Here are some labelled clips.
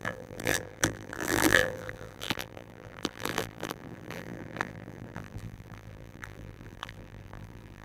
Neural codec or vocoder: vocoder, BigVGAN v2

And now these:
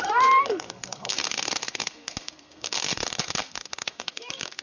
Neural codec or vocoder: codec, SNAC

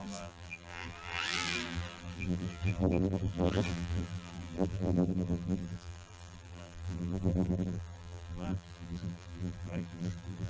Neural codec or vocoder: vocoder, BigVGAN v2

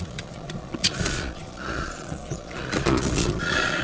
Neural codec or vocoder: vocoder, Vocos